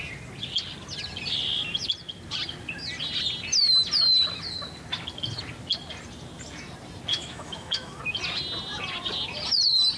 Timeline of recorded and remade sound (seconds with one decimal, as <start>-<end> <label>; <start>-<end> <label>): 0.0-7.1 recorded; 7.1-8.0 remade; 8.0-10.0 recorded